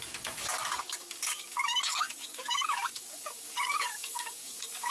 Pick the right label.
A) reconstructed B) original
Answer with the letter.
A